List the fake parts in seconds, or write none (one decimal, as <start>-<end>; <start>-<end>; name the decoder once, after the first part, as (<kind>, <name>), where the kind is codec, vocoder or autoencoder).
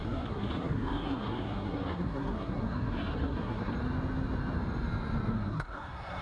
0.0-3.7 (codec, SNAC); 5.3-6.2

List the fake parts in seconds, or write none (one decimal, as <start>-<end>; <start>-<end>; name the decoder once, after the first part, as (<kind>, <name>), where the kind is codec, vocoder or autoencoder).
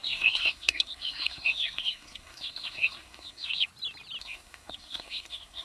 0.0-3.7 (codec, SNAC); 4.2-5.6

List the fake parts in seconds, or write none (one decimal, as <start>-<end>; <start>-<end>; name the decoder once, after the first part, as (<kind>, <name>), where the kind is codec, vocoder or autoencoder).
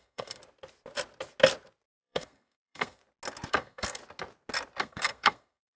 0.0-0.4 (codec, SNAC); 2.0-3.0; 3.5-4.0; 4.8-5.8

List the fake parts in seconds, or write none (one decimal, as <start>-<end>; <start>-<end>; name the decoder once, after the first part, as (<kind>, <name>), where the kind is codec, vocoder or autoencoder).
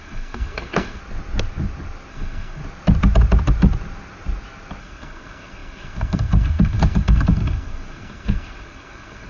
0.0-1.0 (codec, SNAC); 2.1-2.6; 4.8-9.3